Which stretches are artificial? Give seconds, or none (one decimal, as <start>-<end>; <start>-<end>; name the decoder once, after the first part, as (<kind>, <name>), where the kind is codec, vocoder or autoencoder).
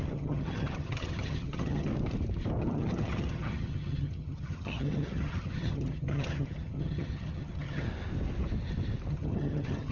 0.0-1.9 (vocoder, HiFi-GAN); 2.6-7.9; 9.1-9.9